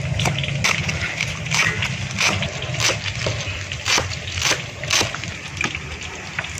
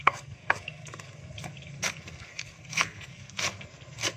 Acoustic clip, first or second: first